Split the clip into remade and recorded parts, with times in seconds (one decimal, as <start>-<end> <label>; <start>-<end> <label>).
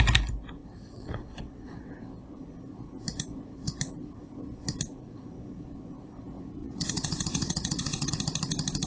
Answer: 0.0-0.6 recorded; 0.6-1.9 remade; 1.9-6.6 recorded; 6.6-8.1 remade; 8.1-8.9 recorded